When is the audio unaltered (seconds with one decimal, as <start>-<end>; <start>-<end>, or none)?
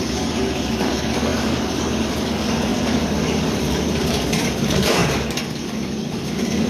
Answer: none